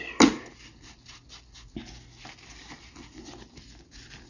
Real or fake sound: real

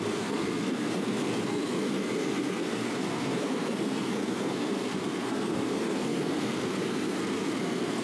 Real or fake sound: fake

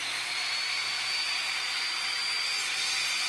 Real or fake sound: real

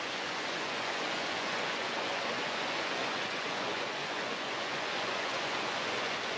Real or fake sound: fake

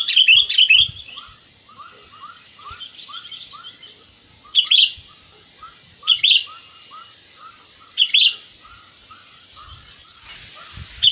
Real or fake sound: real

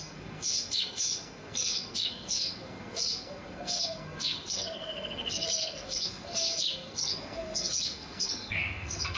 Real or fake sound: fake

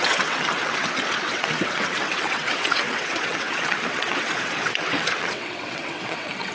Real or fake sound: fake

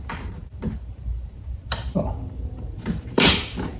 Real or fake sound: fake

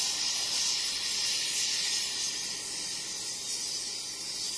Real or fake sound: real